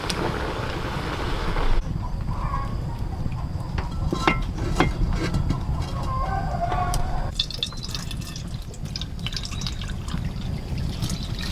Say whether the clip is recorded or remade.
recorded